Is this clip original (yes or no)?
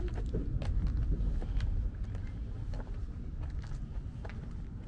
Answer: yes